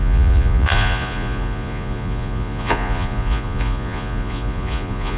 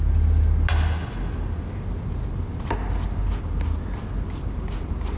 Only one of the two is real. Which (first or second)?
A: second